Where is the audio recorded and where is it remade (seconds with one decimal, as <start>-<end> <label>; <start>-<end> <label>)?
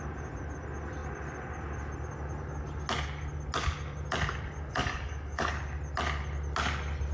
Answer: 0.0-4.8 recorded; 4.8-5.5 remade; 5.5-7.1 recorded